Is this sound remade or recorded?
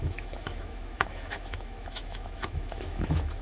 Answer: remade